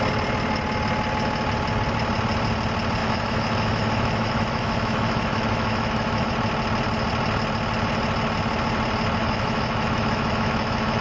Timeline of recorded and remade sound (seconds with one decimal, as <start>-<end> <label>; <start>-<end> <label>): 0.0-3.0 recorded; 3.0-6.3 remade; 6.3-9.2 recorded; 9.2-11.0 remade